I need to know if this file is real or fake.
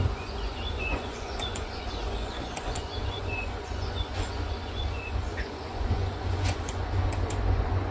fake